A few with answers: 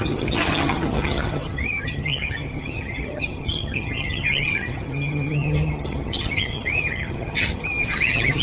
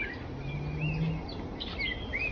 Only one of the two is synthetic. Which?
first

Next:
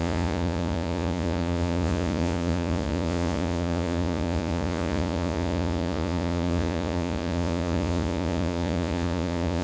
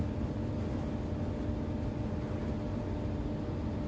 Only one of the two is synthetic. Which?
first